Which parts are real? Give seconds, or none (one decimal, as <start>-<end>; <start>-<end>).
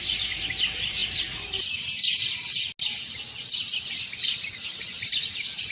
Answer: 0.0-5.7